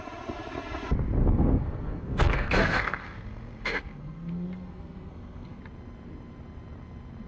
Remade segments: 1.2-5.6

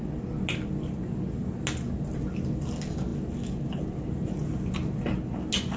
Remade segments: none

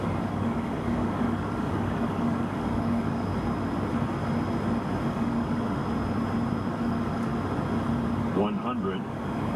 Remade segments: 0.0-3.3; 5.1-5.8; 6.7-7.3; 8.1-9.6

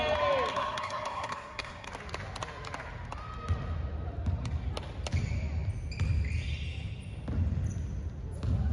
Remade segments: 0.5-1.9

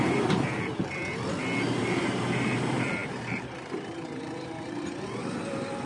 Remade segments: 0.0-1.0; 1.8-5.9